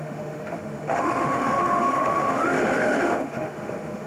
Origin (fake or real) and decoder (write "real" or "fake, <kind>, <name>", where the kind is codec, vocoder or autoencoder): fake, autoencoder, DAC-VAE